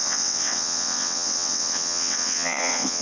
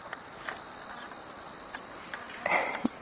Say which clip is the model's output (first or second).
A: first